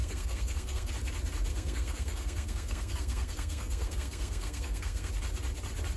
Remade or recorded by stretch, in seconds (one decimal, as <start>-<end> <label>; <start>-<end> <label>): 0.0-0.9 remade; 0.9-1.5 recorded; 1.5-5.1 remade; 5.1-6.0 recorded